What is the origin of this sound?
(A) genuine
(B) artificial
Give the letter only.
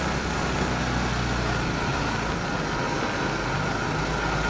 A